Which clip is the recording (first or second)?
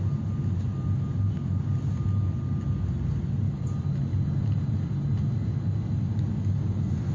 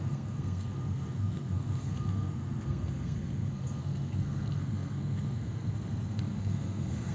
first